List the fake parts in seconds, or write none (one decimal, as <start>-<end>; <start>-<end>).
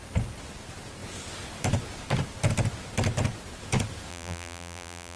4.1-5.2